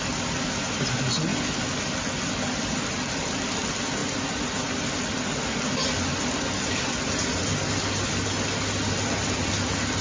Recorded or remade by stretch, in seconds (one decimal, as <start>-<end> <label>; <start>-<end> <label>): 0.0-10.0 recorded